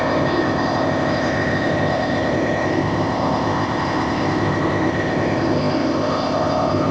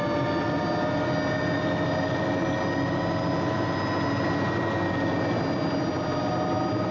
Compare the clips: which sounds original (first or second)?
second